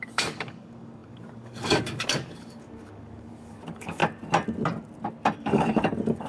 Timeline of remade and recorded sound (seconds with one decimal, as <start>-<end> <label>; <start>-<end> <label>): 0.0-4.0 remade; 4.0-5.4 recorded; 5.4-6.3 remade